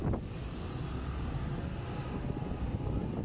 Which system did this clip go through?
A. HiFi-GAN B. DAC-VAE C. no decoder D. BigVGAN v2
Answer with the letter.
C